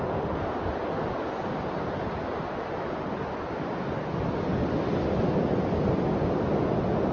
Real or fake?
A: real